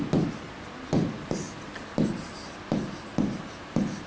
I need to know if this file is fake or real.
real